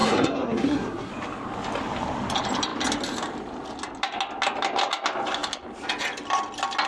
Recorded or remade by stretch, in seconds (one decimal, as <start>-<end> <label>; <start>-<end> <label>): 0.0-1.1 remade; 1.1-6.9 recorded